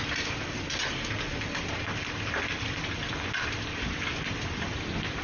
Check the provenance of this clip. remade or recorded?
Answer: recorded